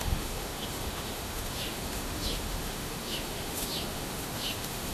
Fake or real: fake